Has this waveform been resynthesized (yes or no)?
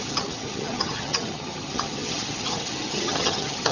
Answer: yes